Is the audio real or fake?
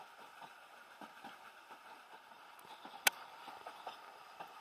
real